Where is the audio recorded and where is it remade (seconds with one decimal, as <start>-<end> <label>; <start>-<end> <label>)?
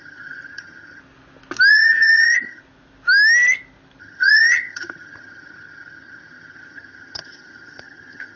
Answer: 0.0-1.0 remade; 1.0-1.7 recorded; 1.7-2.6 remade; 2.6-4.0 recorded; 4.0-8.4 remade